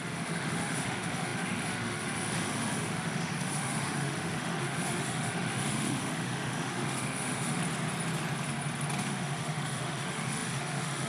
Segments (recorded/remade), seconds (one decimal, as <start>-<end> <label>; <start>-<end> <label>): 0.0-7.6 remade; 7.6-9.0 recorded; 9.0-11.1 remade